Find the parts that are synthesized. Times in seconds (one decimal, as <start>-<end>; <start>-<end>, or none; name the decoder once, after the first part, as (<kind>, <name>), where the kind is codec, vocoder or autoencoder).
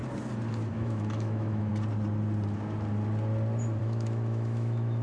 0.7-1.7 (autoencoder, DAC-VAE); 3.8-5.0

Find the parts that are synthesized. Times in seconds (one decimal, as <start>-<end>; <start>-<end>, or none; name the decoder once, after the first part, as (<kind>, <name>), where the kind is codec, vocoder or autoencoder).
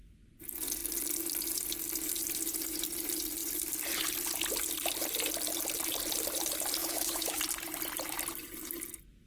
6.8-7.4 (autoencoder, DAC-VAE)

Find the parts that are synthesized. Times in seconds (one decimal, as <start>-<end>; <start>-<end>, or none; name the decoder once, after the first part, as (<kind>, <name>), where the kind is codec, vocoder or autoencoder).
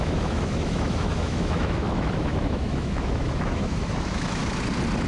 0.0-4.4 (autoencoder, DAC-VAE)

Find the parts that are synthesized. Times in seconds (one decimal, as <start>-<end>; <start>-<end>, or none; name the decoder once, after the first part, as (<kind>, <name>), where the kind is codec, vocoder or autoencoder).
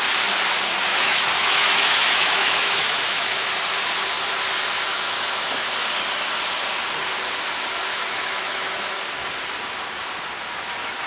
0.9-3.5 (autoencoder, DAC-VAE); 4.9-5.7; 7.9-9.0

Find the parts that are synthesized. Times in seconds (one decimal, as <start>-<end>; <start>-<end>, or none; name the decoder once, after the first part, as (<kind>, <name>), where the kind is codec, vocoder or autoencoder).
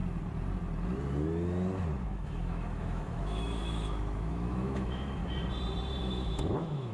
2.0-5.2 (autoencoder, DAC-VAE); 6.0-6.9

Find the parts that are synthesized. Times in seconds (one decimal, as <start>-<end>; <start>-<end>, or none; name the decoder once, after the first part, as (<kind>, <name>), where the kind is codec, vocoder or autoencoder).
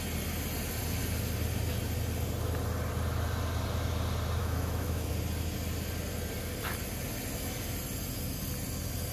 4.4-5.1 (autoencoder, DAC-VAE)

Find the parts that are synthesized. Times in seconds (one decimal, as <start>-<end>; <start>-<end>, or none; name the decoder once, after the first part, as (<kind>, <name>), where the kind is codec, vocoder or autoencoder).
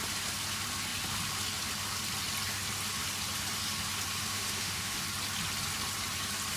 4.3-5.0 (autoencoder, DAC-VAE)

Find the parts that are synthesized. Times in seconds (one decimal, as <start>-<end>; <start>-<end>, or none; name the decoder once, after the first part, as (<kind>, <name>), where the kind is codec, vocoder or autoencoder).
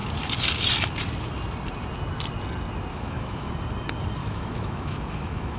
2.9-3.5 (autoencoder, DAC-VAE); 4.2-5.6